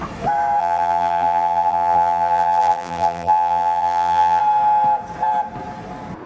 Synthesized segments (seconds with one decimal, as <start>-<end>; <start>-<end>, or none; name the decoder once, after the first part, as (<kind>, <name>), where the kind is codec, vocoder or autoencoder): 0.6-4.4 (vocoder, BigVGAN v2)